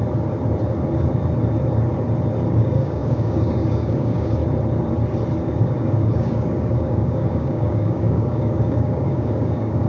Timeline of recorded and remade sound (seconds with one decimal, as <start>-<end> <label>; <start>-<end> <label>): 0.0-2.5 recorded; 2.5-4.4 remade; 4.4-5.6 recorded; 5.6-9.9 remade